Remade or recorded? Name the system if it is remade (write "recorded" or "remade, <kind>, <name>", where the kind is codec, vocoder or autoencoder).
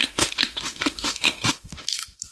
remade, autoencoder, DAC-VAE